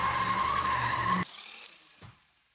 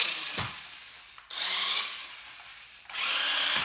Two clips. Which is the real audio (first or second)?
second